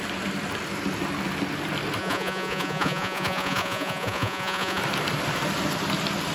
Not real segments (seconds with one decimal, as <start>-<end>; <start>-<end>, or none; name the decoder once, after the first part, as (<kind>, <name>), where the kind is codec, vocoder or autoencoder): 2.0-4.8 (vocoder, Vocos)